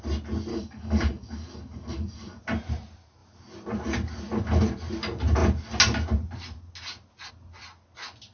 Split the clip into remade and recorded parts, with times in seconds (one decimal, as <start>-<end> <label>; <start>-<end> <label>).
0.0-0.5 recorded; 0.5-2.4 remade; 2.4-8.3 recorded

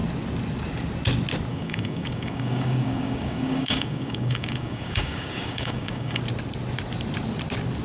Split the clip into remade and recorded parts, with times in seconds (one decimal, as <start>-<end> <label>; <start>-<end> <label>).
0.0-1.5 recorded; 1.5-6.2 remade; 6.2-7.8 recorded

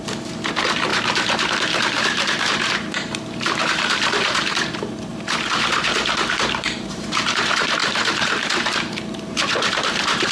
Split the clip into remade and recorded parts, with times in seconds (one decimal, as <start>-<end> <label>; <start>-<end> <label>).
0.0-10.3 remade

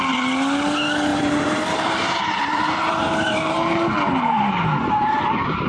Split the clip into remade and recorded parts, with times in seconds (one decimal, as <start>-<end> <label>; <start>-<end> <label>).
0.0-1.1 recorded; 1.1-4.5 remade; 4.5-5.7 recorded

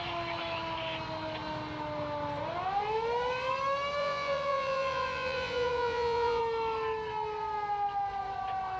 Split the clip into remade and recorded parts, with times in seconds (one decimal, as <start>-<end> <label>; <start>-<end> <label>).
0.0-4.0 recorded; 4.0-6.4 remade; 6.4-8.8 recorded